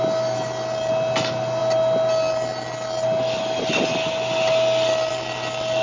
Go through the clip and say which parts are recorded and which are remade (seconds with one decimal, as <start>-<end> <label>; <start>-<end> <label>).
0.0-5.8 recorded